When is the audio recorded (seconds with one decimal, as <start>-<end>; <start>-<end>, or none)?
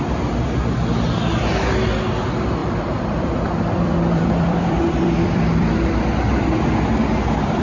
0.0-2.6; 6.0-7.6